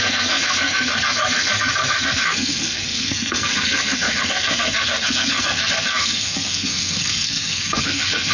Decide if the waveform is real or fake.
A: fake